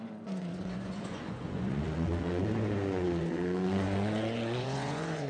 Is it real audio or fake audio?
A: fake